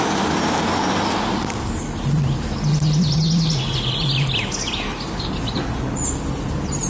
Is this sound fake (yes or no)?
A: no